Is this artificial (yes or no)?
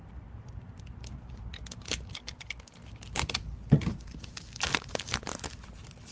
no